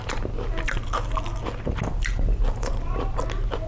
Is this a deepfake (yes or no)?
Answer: no